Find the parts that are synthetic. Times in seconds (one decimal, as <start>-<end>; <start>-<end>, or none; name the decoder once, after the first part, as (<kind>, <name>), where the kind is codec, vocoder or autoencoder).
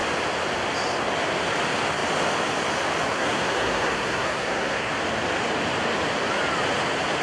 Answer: 3.1-4.9 (codec, SNAC)